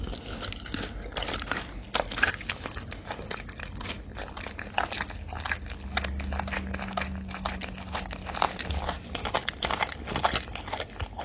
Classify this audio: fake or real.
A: real